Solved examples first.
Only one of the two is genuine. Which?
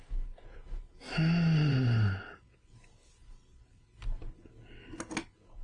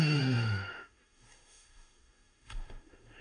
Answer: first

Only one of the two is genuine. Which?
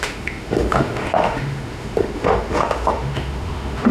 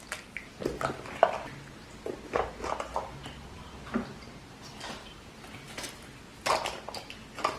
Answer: second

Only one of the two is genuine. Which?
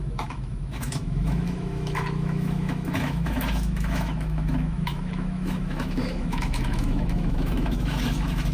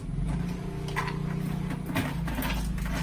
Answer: second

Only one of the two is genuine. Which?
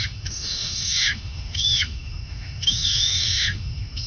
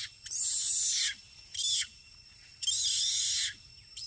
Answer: second